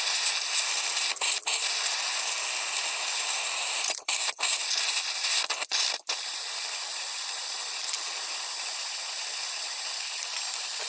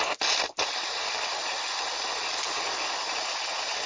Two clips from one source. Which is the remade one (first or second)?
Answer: first